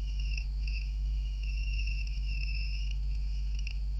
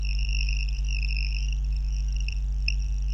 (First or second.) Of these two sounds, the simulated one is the first